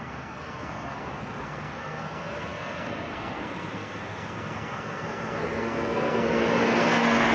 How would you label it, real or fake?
fake